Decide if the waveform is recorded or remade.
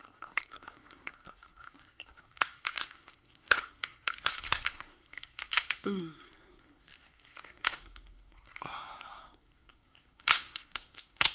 remade